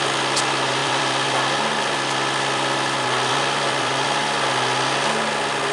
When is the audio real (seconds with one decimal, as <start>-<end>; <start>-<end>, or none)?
4.2-5.7